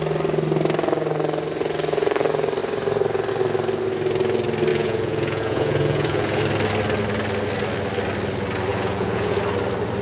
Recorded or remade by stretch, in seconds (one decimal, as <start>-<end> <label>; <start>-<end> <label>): 0.0-4.7 recorded; 4.7-6.4 remade; 6.4-8.7 recorded; 8.7-9.4 remade; 9.4-10.0 recorded